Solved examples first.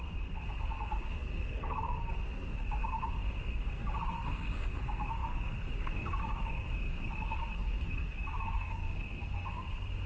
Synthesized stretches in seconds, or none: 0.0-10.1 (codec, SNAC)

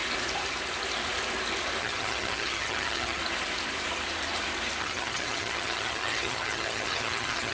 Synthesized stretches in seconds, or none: 1.8-3.2 (vocoder, HiFi-GAN); 4.8-7.5

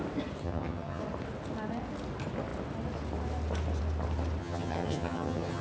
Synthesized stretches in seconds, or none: 0.4-1.0 (vocoder, HiFi-GAN); 4.4-5.6

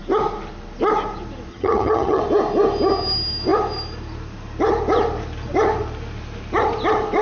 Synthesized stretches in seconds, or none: 1.5-2.2 (vocoder, HiFi-GAN)

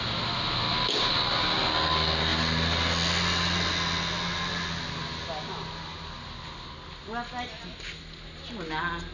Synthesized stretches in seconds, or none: none

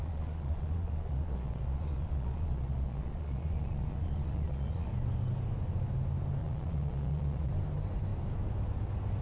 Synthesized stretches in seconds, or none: 0.0-4.9 (vocoder, Vocos); 6.4-7.5

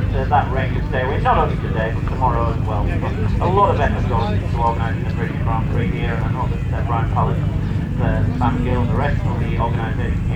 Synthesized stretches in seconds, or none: none